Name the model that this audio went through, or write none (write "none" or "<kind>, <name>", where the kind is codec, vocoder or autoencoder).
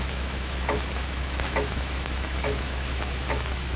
autoencoder, DAC-VAE